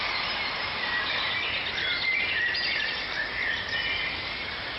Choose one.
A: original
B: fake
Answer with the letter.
A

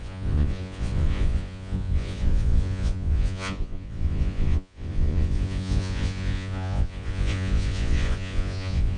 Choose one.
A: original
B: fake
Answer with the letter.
B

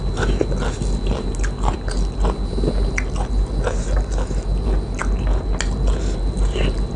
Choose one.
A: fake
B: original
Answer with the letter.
B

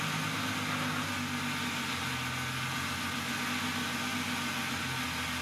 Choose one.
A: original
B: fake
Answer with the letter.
A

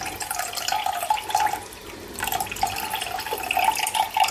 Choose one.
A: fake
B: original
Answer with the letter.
B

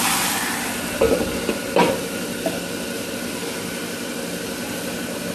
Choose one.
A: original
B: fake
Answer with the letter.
A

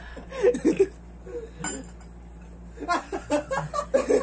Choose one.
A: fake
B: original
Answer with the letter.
B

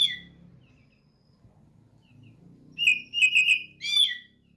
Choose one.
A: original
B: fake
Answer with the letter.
A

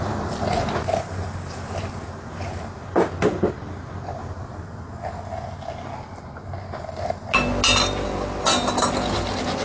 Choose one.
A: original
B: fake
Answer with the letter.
A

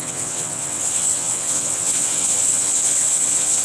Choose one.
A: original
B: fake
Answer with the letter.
B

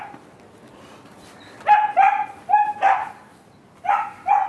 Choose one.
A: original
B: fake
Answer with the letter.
A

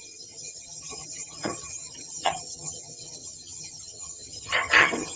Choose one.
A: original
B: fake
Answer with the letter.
B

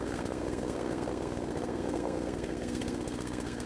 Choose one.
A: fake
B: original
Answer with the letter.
A